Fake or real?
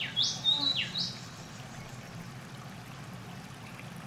real